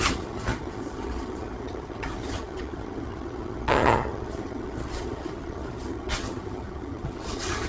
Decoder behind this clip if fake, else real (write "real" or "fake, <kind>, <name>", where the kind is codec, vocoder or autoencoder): fake, vocoder, HiFi-GAN